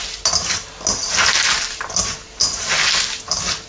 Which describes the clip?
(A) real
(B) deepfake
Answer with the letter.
A